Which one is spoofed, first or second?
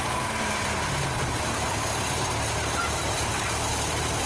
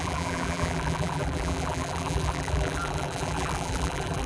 second